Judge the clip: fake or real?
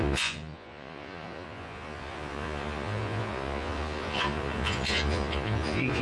fake